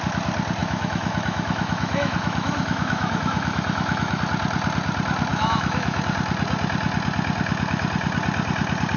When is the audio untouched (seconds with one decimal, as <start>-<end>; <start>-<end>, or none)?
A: 0.0-0.6; 4.2-5.3; 6.0-9.0